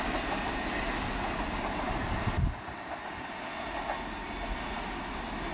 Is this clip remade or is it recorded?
recorded